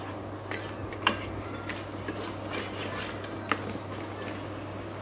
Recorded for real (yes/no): yes